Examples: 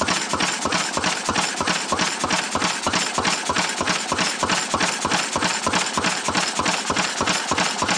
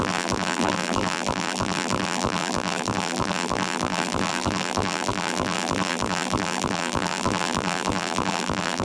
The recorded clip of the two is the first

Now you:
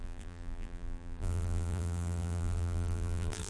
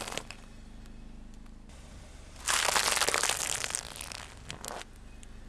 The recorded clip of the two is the second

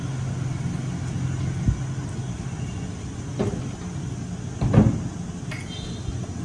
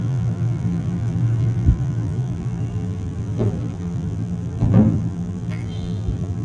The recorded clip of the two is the first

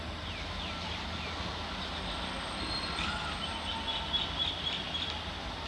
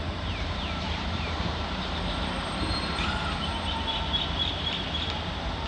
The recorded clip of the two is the first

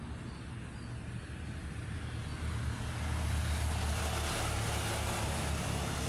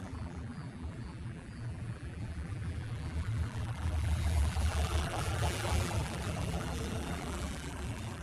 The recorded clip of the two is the first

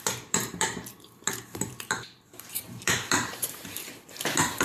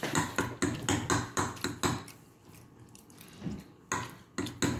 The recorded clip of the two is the second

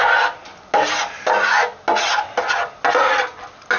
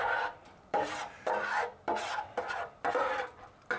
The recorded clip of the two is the first